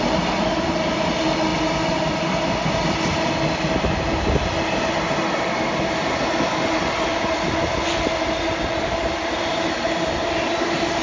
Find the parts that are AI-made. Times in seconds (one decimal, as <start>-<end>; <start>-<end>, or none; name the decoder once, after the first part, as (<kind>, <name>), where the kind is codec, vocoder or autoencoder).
none